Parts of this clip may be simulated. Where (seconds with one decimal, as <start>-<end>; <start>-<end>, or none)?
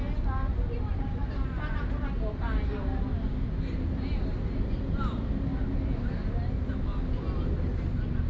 none